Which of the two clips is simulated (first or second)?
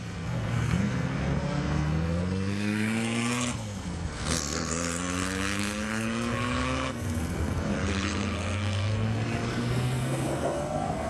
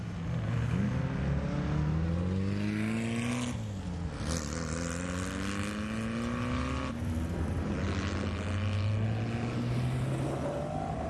first